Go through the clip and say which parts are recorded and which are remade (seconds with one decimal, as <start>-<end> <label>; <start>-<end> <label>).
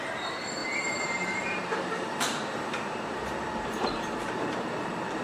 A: 0.0-5.2 remade